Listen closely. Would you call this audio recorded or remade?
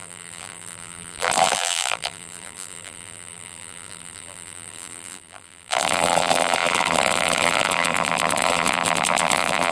remade